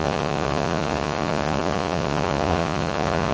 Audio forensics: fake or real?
fake